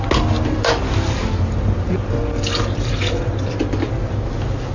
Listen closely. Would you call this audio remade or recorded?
recorded